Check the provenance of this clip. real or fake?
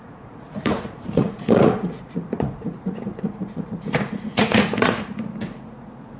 fake